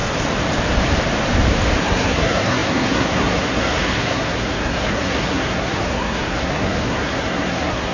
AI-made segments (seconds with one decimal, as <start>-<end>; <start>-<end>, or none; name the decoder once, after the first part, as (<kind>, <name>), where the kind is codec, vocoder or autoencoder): 1.8-7.9 (codec, SNAC)